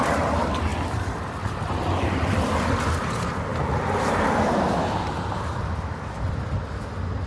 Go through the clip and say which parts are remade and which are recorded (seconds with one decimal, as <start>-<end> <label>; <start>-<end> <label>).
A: 0.0-7.3 recorded